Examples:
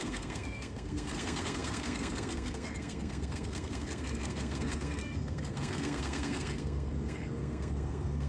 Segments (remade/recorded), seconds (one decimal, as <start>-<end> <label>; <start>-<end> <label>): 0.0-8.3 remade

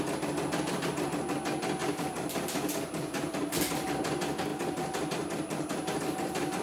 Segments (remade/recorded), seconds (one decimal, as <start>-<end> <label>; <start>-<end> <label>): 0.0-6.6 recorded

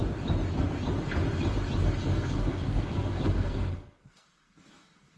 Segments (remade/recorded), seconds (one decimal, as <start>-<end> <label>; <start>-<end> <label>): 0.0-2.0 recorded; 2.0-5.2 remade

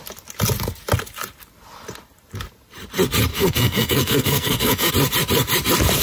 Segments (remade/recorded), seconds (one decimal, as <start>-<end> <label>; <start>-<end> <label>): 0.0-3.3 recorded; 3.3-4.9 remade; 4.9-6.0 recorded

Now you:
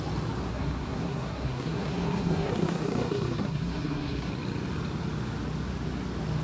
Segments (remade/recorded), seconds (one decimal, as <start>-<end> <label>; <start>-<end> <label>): 0.0-0.5 recorded; 0.5-4.3 remade; 4.3-6.4 recorded